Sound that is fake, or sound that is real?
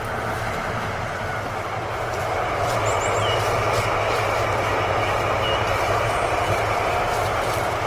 real